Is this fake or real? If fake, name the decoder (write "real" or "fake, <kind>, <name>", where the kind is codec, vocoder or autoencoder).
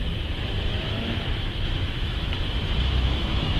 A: fake, autoencoder, DAC-VAE